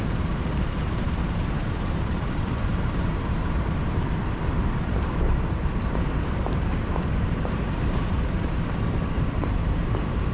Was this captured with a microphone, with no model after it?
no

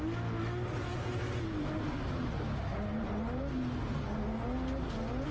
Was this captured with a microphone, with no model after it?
yes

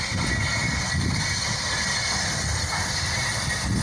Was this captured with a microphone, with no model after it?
yes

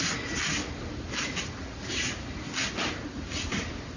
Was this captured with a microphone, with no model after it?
yes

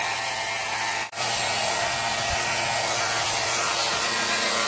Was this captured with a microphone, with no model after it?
yes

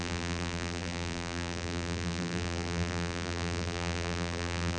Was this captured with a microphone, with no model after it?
no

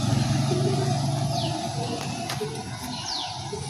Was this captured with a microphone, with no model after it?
yes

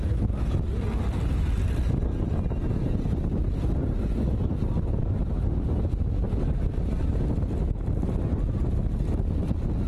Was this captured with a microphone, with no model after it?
yes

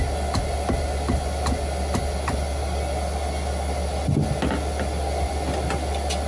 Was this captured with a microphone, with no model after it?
yes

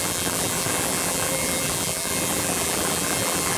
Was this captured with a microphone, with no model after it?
no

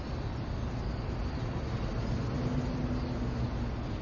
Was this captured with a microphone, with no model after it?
yes